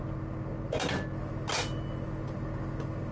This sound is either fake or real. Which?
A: real